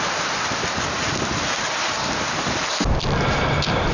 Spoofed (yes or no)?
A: no